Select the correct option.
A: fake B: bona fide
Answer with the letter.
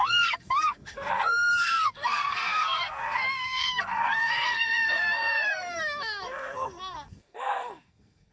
A